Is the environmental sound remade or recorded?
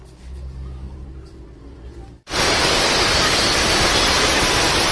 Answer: recorded